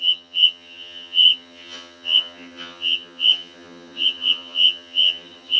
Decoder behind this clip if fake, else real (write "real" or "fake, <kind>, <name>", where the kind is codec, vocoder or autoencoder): fake, vocoder, HiFi-GAN